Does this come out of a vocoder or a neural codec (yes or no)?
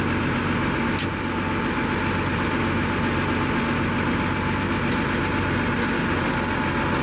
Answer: no